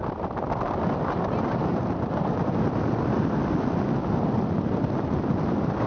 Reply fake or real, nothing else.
real